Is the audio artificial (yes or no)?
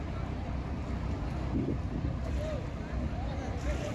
no